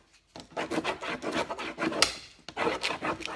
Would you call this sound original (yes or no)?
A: yes